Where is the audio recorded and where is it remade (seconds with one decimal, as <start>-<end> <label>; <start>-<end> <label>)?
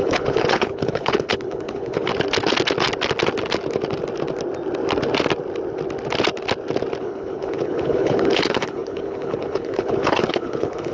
0.0-2.1 remade; 2.1-7.0 recorded; 7.0-10.9 remade